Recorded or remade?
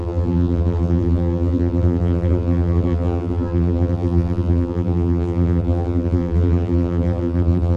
remade